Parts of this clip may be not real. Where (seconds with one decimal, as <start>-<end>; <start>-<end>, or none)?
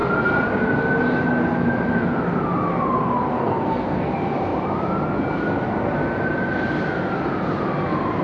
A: 3.3-4.1